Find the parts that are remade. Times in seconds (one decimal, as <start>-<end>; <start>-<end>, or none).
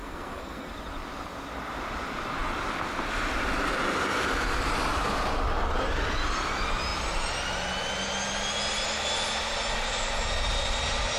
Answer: 0.0-0.7